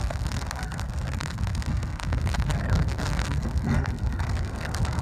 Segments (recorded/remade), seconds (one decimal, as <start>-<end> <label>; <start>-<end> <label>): 0.0-5.0 remade